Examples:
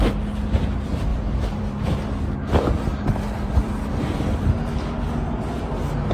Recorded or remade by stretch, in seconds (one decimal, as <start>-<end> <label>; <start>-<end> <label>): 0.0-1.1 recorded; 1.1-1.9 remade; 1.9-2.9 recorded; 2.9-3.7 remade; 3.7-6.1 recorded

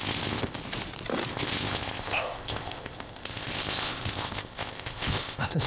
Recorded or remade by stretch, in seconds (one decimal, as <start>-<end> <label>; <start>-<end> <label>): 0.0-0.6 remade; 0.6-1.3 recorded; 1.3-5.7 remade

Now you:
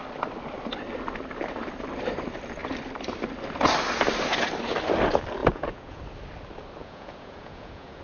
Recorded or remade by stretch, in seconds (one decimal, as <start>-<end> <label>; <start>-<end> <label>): 0.0-5.4 recorded; 5.4-6.0 remade; 6.0-6.8 recorded; 6.8-8.0 remade

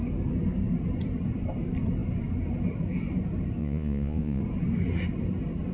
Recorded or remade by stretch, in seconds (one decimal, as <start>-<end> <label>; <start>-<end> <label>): 0.0-3.6 recorded; 3.6-4.4 remade; 4.4-5.7 recorded

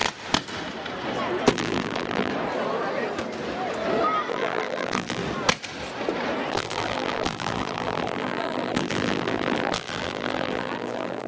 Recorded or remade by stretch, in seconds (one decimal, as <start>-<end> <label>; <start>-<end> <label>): 0.0-1.5 recorded; 1.5-2.3 remade; 2.3-4.3 recorded; 4.3-5.2 remade; 5.2-6.5 recorded; 6.5-11.3 remade